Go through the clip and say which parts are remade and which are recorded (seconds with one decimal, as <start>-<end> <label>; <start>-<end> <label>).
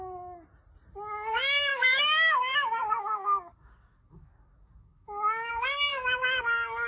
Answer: 0.0-1.7 recorded; 1.7-5.5 remade; 5.5-5.9 recorded; 5.9-6.4 remade; 6.4-6.9 recorded